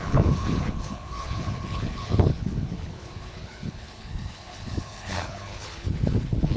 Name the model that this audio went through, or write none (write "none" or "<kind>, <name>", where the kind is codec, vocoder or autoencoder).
codec, HILCodec